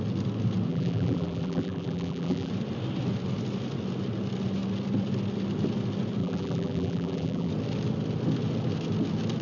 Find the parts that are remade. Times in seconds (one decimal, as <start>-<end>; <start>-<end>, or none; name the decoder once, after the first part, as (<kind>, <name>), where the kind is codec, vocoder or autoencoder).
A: 0.7-2.5 (vocoder, BigVGAN v2); 6.2-7.5